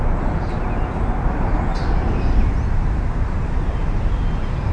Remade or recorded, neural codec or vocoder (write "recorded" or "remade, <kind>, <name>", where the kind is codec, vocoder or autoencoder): recorded